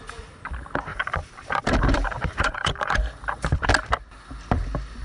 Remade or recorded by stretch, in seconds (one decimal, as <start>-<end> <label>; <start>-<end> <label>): 0.0-0.9 recorded; 0.9-3.6 remade; 3.6-5.0 recorded